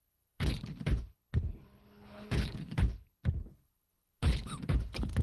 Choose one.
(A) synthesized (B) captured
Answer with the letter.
A